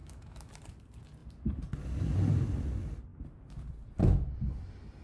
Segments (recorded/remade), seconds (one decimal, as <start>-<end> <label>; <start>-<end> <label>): 0.0-0.5 remade; 0.5-5.0 recorded